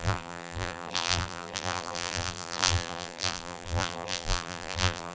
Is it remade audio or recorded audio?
remade